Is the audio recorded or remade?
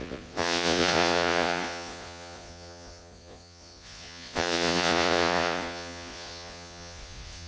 remade